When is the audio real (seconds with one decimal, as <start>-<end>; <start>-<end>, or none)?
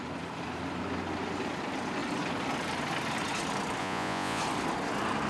0.0-3.8; 4.4-5.3